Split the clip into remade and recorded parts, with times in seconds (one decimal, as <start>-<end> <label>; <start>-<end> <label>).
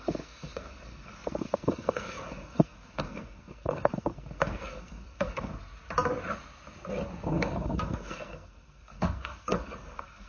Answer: 0.0-5.5 remade; 5.5-7.3 recorded; 7.3-10.3 remade